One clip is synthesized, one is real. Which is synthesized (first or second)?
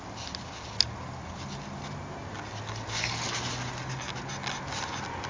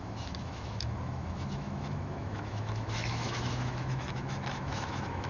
second